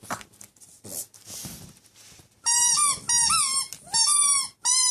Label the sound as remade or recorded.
recorded